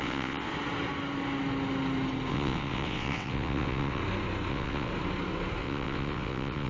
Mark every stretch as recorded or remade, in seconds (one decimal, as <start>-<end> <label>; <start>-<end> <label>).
0.0-0.5 remade; 0.5-2.3 recorded; 2.3-4.0 remade; 4.0-4.5 recorded; 4.5-4.9 remade; 4.9-5.6 recorded; 5.6-6.7 remade